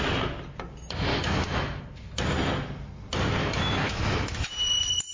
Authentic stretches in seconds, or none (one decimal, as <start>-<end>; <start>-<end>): 0.0-1.1; 1.8-3.4; 4.5-5.1